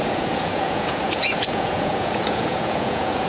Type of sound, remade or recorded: remade